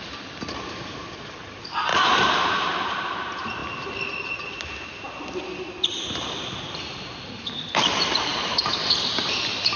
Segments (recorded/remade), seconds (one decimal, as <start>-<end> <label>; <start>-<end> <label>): 0.0-1.9 remade; 1.9-2.5 recorded; 2.5-3.6 remade; 3.6-7.2 recorded; 7.2-9.8 remade